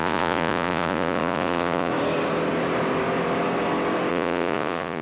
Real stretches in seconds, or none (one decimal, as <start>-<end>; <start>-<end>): 1.9-4.1